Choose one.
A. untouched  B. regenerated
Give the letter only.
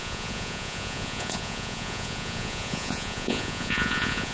B